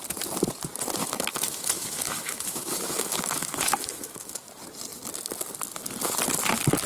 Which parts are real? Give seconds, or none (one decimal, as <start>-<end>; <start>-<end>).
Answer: 0.0-1.0; 4.5-6.9